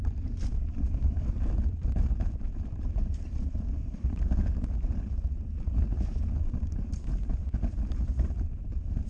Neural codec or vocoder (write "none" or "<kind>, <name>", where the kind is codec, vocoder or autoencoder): vocoder, BigVGAN v2